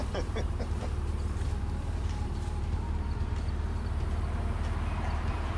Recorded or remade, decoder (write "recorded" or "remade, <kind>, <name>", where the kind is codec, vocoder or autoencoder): remade, vocoder, BigVGAN v2